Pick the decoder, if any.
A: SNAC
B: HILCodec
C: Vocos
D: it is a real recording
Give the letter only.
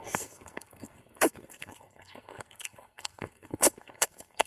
A